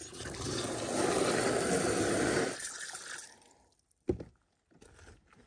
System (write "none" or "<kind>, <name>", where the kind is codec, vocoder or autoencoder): none